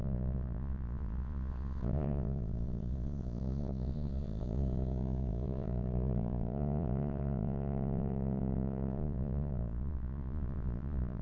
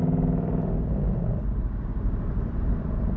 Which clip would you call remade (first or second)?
first